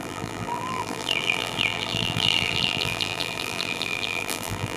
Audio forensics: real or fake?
fake